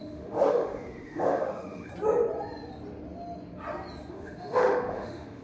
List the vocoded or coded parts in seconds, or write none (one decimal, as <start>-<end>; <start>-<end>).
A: 0.0-1.9; 4.1-5.4